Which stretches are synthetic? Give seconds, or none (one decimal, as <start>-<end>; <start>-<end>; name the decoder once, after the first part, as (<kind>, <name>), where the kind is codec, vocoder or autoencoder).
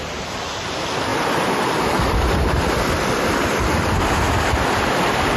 none